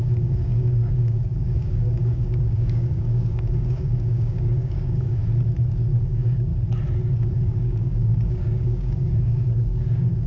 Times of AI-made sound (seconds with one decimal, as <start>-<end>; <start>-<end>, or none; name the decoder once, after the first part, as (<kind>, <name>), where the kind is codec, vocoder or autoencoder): 0.0-5.2 (codec, DAC); 5.7-6.5; 7.2-10.3